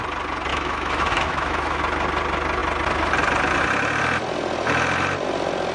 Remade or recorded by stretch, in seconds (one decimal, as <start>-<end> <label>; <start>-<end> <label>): 0.0-0.5 recorded; 0.5-1.8 remade; 1.8-5.7 recorded